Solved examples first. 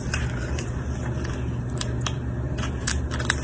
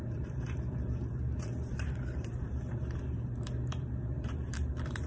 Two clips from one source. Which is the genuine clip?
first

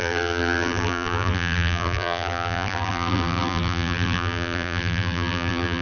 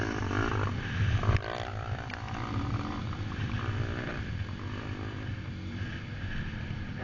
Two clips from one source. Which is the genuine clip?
second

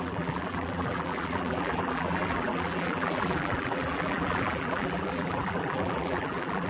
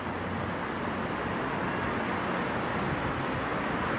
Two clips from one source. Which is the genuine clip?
second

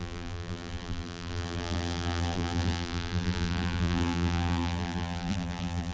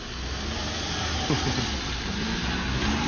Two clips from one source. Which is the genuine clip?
second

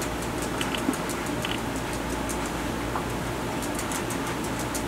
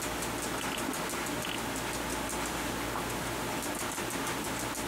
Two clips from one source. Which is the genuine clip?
second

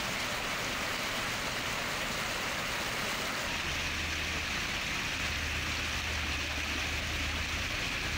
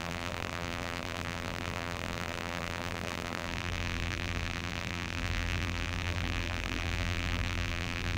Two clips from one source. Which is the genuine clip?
first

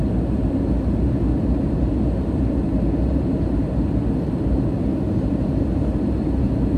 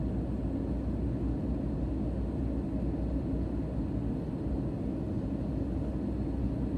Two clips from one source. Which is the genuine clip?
second